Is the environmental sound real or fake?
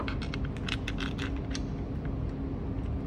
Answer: real